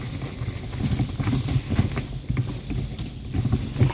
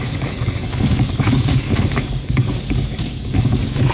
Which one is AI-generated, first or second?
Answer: second